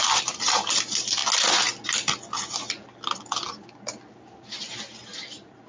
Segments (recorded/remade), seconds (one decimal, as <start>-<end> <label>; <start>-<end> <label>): 0.0-1.2 remade; 1.2-4.1 recorded; 4.1-5.7 remade

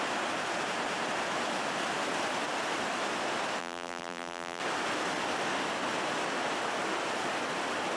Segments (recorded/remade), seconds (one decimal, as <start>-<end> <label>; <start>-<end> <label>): 0.0-3.6 recorded; 3.6-4.6 remade; 4.6-8.0 recorded